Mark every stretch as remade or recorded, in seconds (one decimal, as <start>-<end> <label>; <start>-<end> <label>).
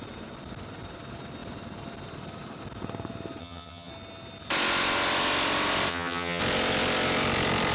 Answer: 0.0-3.4 recorded; 3.4-3.9 remade; 3.9-5.9 recorded; 5.9-6.4 remade; 6.4-7.7 recorded